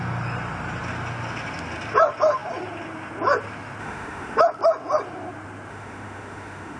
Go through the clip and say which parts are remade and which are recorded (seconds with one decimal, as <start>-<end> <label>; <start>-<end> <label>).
0.0-3.8 recorded; 3.8-4.4 remade; 4.4-5.7 recorded; 5.7-6.8 remade